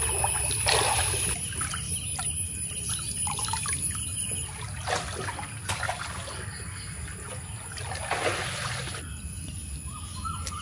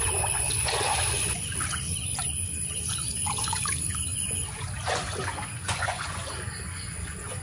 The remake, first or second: second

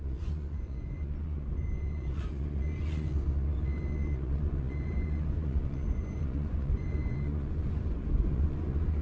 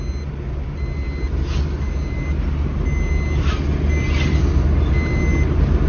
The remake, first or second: first